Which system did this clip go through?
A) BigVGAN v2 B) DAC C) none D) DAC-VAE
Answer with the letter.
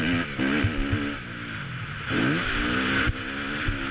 C